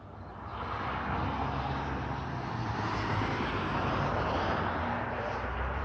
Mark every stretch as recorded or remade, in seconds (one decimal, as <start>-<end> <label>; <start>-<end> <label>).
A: 0.0-5.8 recorded